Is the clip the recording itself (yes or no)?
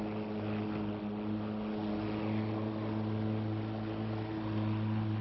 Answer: yes